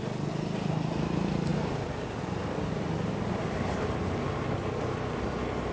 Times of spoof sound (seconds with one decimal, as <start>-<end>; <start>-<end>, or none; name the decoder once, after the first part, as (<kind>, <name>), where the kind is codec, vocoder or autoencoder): none